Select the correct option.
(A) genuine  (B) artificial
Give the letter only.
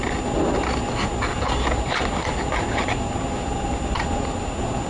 A